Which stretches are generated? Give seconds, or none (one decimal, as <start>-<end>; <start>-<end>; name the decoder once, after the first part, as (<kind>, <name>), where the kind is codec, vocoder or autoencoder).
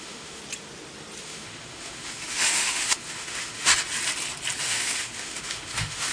0.0-0.4 (autoencoder, DAC-VAE); 1.2-3.7; 4.6-6.1